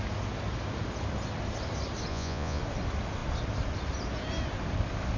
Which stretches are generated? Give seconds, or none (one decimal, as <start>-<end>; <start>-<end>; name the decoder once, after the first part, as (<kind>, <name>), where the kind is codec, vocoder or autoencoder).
2.1-2.6 (vocoder, Vocos)